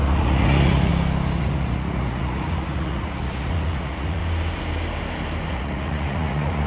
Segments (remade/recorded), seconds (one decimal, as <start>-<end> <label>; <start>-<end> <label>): 0.0-0.9 remade; 0.9-1.4 recorded; 1.4-4.2 remade; 4.2-5.5 recorded; 5.5-6.7 remade